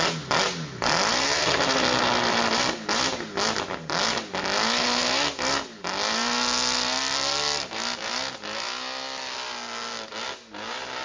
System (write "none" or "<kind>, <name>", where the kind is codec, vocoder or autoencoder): none